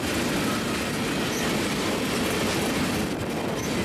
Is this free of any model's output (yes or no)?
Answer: yes